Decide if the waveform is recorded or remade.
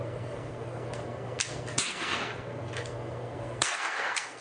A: remade